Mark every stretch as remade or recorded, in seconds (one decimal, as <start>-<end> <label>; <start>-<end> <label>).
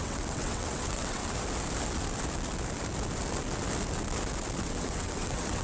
0.0-1.2 remade; 1.2-4.6 recorded; 4.6-5.6 remade